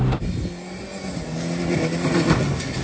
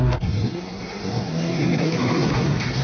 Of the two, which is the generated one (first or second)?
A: second